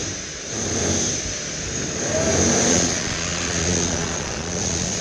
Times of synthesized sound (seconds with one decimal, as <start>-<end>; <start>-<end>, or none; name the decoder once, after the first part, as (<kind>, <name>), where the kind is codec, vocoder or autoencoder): 2.7-5.0 (vocoder, Vocos)